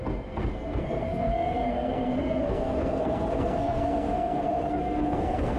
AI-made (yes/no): yes